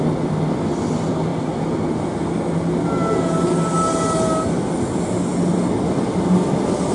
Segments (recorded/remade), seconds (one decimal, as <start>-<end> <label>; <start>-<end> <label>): 0.0-6.9 recorded